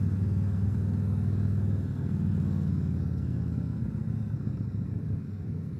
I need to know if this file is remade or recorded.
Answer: remade